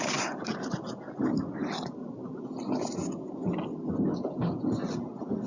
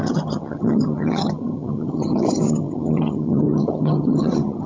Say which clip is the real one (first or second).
first